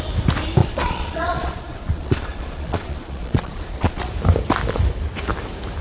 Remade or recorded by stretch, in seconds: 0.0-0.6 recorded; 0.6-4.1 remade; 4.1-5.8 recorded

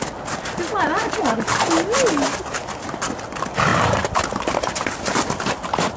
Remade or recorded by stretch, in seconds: 0.0-6.0 recorded

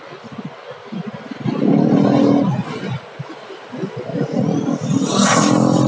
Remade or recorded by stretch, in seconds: 0.0-5.9 recorded

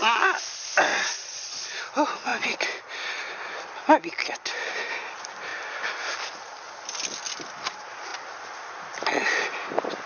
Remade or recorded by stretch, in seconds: 0.0-0.9 recorded; 0.9-1.8 remade; 1.8-10.1 recorded

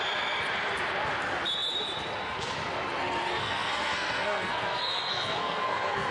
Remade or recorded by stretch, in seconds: 0.0-3.4 recorded; 3.4-6.1 remade

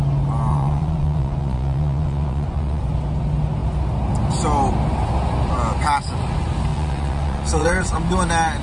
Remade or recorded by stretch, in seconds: 0.0-0.5 recorded; 0.5-2.8 remade; 2.8-6.7 recorded; 6.7-8.0 remade; 8.0-8.6 recorded